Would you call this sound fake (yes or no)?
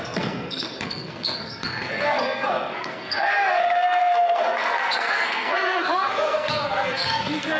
yes